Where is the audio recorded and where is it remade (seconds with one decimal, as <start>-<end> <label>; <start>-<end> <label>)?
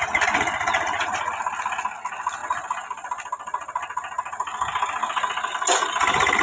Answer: 0.0-1.3 remade; 1.3-6.4 recorded